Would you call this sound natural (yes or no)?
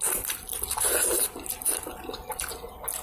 yes